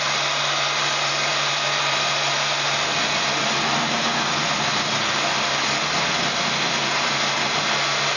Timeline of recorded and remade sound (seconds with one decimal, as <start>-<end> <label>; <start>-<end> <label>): 0.0-8.2 recorded